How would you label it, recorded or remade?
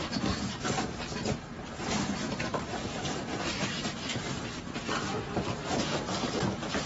recorded